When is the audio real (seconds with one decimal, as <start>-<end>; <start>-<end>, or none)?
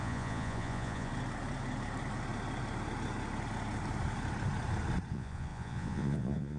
1.1-5.1